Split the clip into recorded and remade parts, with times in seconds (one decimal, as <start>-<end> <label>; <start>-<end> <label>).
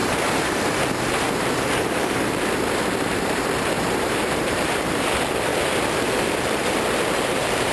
0.0-5.5 remade; 5.5-7.2 recorded; 7.2-7.7 remade